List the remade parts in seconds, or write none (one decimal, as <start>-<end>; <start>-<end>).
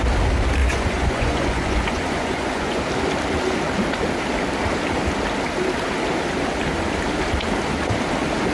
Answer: 0.6-2.8